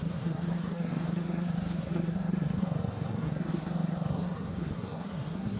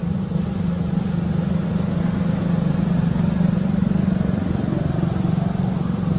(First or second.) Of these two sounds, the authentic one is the second